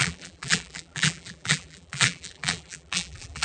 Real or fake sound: fake